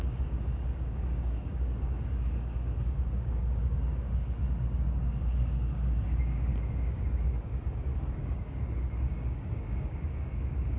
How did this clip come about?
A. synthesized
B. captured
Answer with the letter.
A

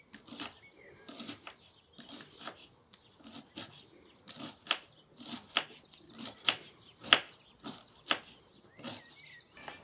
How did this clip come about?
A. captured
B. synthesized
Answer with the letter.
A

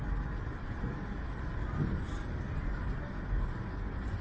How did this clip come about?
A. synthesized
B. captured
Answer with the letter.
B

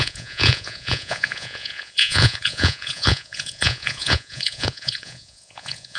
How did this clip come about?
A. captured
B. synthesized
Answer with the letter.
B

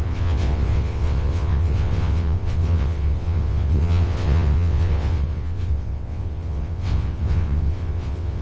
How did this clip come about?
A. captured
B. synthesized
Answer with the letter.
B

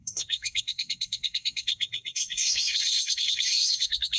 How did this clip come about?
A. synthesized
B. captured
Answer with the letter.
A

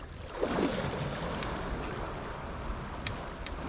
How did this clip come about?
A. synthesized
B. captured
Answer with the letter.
B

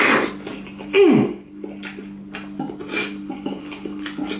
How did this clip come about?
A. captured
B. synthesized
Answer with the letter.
A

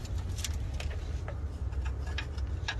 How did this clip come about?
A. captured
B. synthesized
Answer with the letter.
A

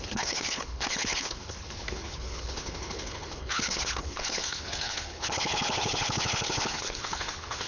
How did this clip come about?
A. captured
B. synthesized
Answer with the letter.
B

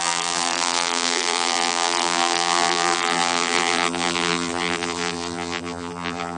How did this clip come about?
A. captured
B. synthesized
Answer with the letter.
B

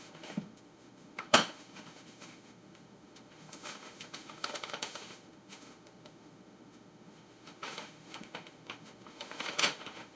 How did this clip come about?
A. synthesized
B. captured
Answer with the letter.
A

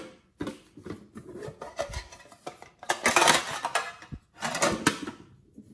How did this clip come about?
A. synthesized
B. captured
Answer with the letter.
B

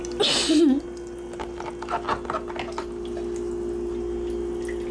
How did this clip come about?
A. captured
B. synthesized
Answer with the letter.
A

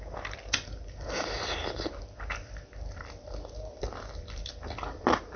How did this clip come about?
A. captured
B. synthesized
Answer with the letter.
B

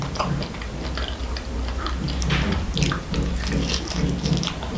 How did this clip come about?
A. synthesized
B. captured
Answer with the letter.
B